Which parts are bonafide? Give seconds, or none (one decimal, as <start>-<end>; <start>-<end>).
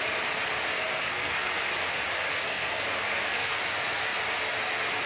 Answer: 0.0-1.1; 1.6-2.3; 3.6-5.1